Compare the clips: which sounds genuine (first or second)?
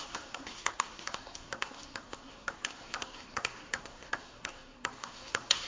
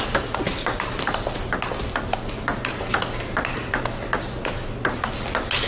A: second